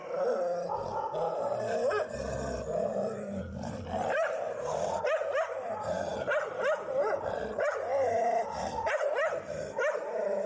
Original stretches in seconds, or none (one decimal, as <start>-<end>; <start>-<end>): 0.0-0.9; 1.4-4.2; 5.0-6.1; 9.1-10.5